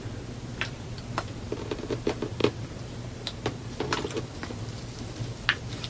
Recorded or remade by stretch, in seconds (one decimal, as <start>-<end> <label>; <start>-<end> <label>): 0.0-0.5 recorded; 0.5-1.9 remade; 1.9-2.4 recorded; 2.4-5.1 remade; 5.1-5.9 recorded